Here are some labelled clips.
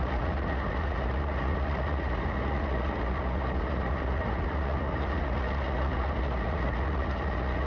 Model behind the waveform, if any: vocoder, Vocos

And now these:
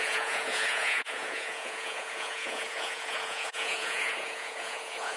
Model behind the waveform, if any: vocoder, Vocos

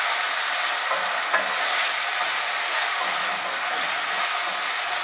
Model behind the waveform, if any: none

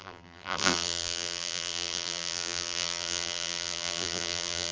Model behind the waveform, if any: vocoder, BigVGAN v2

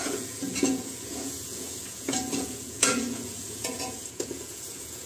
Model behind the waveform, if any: vocoder, Vocos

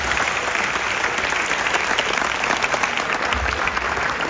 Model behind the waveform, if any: none